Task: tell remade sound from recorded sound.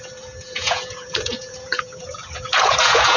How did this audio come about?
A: remade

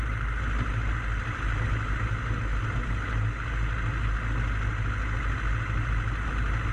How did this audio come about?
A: recorded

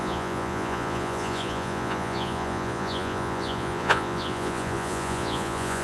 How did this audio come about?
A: remade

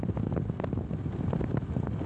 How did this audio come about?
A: recorded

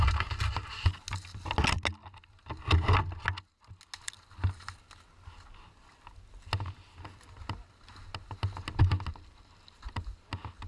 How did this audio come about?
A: recorded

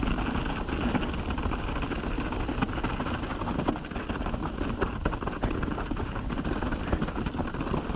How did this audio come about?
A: recorded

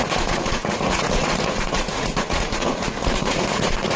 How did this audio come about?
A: remade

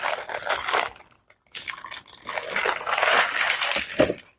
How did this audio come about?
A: recorded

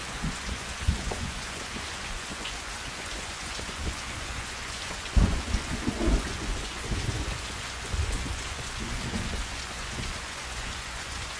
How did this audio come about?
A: remade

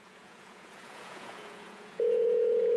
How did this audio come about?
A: remade